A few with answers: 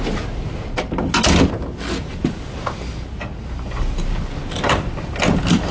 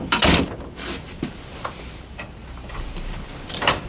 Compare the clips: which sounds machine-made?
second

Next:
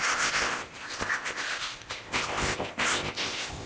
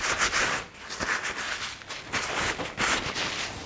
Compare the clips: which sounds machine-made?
first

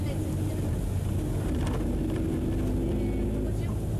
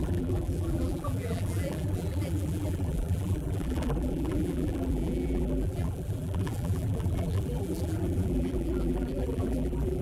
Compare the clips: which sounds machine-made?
second